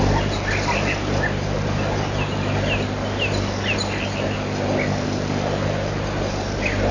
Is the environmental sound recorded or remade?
recorded